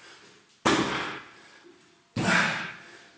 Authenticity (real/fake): real